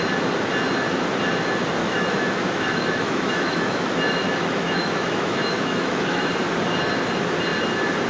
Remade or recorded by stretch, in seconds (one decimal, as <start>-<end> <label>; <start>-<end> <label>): 0.0-1.8 recorded; 1.8-6.3 remade; 6.3-8.1 recorded